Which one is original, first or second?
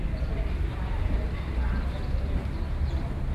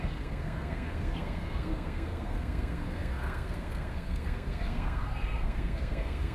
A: first